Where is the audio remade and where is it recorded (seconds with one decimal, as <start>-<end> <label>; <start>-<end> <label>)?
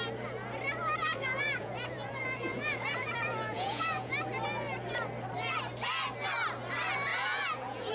0.0-1.0 recorded; 1.0-4.1 remade; 4.1-7.1 recorded; 7.1-7.9 remade